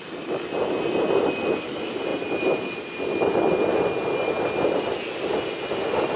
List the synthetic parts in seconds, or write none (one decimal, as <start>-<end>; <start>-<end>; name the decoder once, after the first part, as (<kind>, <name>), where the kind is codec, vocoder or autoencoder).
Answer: none